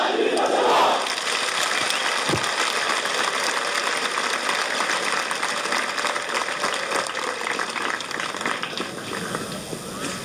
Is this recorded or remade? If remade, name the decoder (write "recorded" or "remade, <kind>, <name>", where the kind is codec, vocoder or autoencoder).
recorded